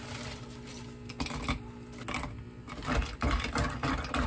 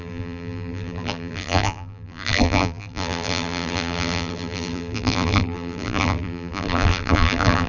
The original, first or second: first